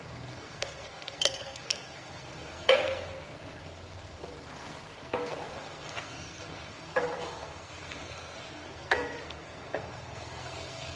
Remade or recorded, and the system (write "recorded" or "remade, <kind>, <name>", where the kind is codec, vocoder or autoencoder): remade, codec, SNAC